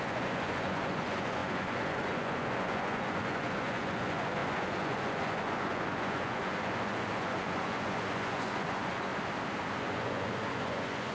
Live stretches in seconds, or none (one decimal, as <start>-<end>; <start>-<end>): 9.1-9.7

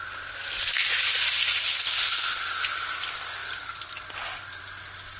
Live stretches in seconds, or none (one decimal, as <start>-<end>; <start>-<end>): 0.0-5.2

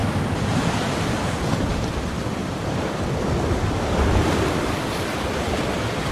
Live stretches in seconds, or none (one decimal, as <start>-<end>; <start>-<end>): 0.0-6.1